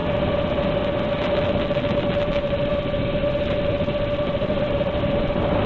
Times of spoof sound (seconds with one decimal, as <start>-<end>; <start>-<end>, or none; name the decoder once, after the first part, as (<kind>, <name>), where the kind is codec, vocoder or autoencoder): 2.2-5.7 (vocoder, BigVGAN v2)